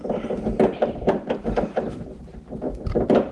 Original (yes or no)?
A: no